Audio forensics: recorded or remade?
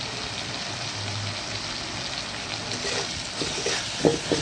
recorded